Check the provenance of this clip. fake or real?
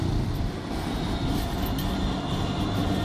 real